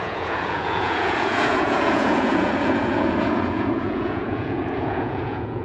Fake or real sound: fake